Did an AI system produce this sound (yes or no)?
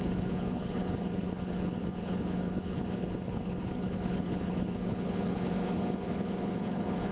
yes